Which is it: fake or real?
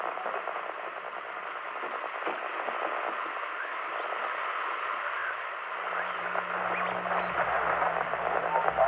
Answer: real